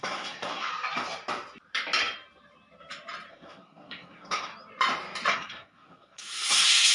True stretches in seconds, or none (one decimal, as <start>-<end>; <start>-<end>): 0.7-3.3; 4.5-5.3